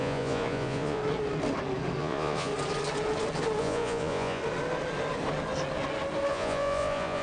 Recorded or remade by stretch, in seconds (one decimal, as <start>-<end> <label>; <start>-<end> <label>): 0.0-1.0 remade; 1.0-2.0 recorded; 2.0-2.5 remade; 2.5-3.6 recorded; 3.6-4.4 remade; 4.4-6.3 recorded; 6.3-7.2 remade

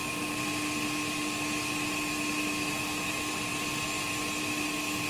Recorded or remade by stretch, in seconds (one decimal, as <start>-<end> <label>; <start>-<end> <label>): 0.0-5.1 recorded

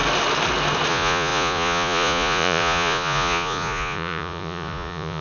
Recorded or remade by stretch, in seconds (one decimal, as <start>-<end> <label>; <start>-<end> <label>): 0.0-0.9 recorded; 0.9-5.2 remade

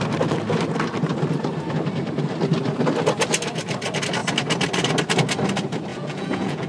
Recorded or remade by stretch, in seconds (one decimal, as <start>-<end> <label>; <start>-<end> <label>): 0.0-5.9 recorded; 5.9-6.7 remade

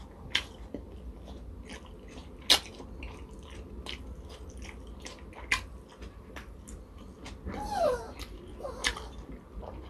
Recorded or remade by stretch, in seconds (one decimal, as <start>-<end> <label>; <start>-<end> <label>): 0.0-9.9 recorded

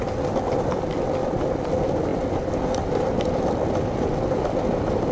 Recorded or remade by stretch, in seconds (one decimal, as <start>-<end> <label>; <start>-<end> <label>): 0.0-5.1 recorded

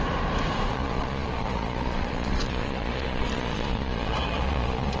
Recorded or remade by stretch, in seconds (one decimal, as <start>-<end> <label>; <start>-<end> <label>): 0.0-0.7 recorded; 0.7-5.0 remade